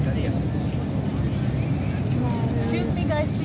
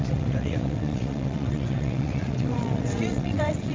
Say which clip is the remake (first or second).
second